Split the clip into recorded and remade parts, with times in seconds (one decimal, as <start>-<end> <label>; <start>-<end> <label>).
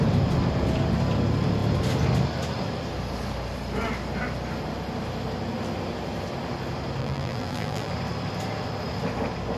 0.0-7.0 recorded; 7.0-7.9 remade; 7.9-9.6 recorded